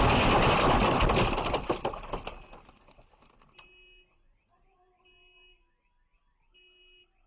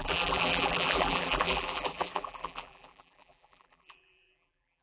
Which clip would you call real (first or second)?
first